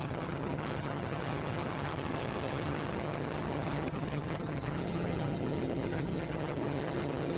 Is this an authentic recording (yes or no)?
no